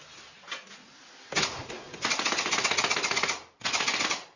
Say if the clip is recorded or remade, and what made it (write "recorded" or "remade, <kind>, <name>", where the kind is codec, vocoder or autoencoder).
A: recorded